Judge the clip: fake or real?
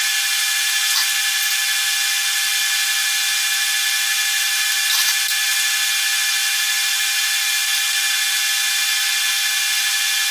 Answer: real